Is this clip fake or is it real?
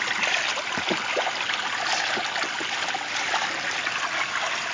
real